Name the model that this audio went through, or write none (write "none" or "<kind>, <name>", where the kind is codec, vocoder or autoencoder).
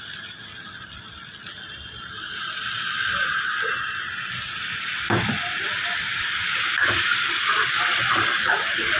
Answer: none